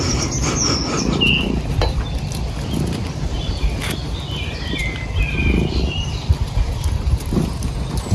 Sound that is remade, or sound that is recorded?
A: recorded